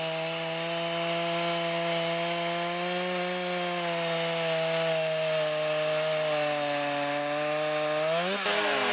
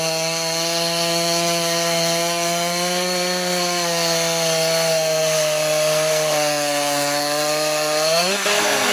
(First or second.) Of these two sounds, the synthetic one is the second